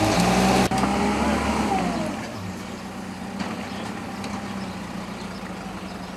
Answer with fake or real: real